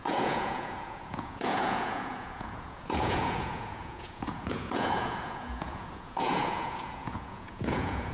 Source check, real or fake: fake